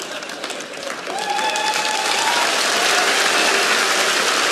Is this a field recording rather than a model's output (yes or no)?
yes